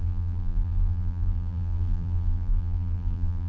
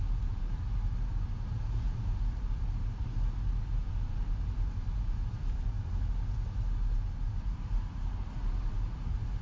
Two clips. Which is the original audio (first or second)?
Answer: second